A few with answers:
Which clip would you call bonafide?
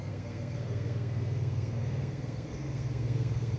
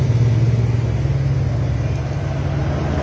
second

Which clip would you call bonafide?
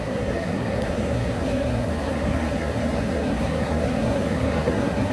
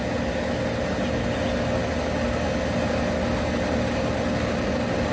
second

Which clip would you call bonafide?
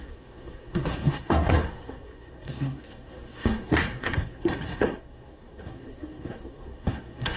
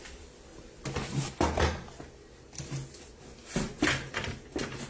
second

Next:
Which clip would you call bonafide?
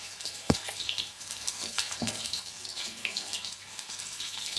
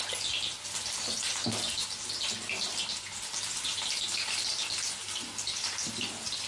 second